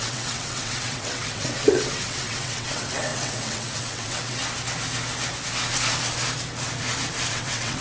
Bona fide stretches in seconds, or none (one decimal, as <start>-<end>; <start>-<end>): 4.4-7.3